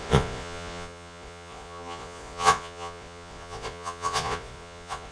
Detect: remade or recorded remade